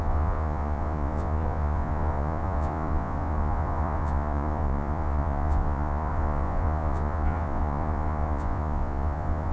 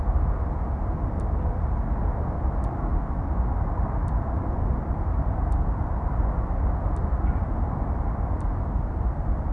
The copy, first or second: first